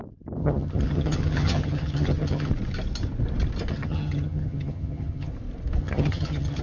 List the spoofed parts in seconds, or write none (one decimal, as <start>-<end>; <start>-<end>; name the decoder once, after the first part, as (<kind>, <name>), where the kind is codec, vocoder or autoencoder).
0.4-2.5 (vocoder, HiFi-GAN); 3.7-5.3; 5.8-6.6